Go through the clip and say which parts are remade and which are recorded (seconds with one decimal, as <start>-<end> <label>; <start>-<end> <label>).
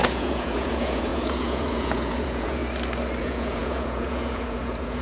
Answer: 0.0-2.6 remade; 2.6-3.2 recorded; 3.2-5.0 remade